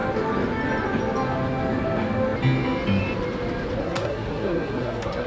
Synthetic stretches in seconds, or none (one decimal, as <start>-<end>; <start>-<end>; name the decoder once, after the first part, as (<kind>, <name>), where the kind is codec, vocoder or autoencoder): 3.8-5.3 (codec, SNAC)